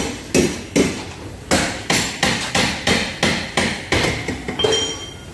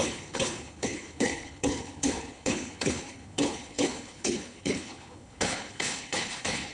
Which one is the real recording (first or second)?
first